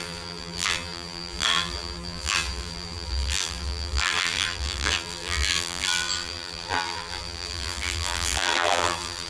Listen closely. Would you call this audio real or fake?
fake